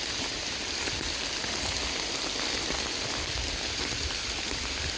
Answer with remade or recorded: recorded